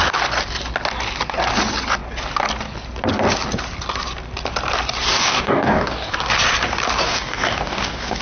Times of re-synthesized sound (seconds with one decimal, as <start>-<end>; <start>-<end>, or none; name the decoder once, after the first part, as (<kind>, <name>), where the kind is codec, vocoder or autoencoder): 5.1-6.1 (codec, DAC); 7.0-8.2